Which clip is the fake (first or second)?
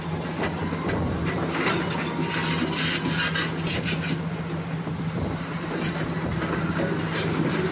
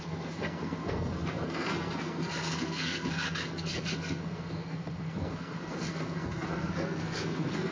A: second